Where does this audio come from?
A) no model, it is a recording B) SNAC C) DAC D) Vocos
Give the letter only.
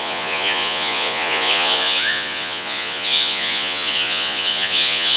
D